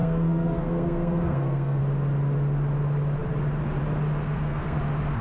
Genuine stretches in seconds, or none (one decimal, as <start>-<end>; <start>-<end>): 1.8-4.2; 4.8-5.2